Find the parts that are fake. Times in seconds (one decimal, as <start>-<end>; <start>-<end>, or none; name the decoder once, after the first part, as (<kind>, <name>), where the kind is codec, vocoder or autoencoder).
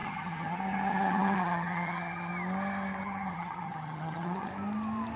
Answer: 0.0-2.3 (vocoder, HiFi-GAN); 3.0-4.5